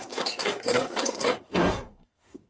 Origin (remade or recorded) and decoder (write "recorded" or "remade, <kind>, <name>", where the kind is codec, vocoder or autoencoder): remade, codec, SNAC